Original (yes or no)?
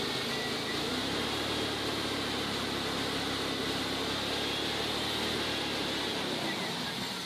yes